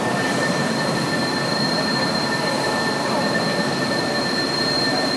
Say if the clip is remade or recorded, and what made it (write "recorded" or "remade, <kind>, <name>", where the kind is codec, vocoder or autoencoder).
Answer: remade, vocoder, BigVGAN v2